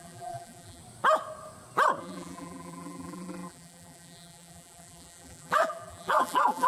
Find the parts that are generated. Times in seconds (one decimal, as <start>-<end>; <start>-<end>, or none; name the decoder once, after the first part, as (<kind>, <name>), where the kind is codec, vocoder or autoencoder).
0.0-0.8 (vocoder, BigVGAN v2); 2.0-6.7